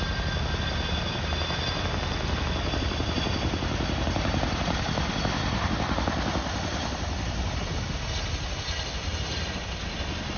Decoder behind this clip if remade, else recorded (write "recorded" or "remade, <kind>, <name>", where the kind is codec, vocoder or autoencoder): recorded